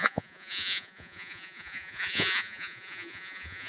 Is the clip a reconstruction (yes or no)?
yes